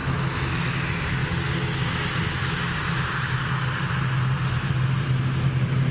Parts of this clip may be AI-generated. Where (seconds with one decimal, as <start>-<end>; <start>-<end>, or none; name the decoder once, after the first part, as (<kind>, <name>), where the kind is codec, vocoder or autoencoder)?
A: 0.0-0.6 (autoencoder, DAC-VAE)